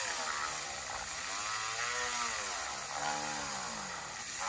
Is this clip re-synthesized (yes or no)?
no